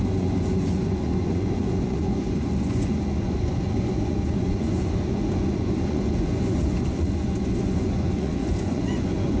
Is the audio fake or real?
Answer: fake